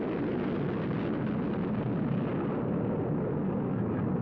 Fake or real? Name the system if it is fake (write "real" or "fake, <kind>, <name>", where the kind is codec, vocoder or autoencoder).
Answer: real